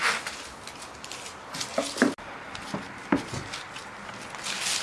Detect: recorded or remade recorded